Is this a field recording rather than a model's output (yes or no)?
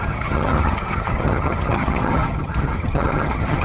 no